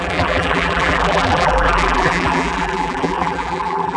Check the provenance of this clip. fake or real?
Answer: fake